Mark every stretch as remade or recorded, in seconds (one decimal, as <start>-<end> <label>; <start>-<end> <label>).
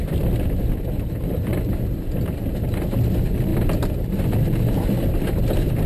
0.0-5.9 recorded